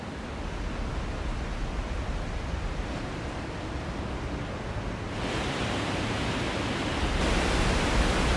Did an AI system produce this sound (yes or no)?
no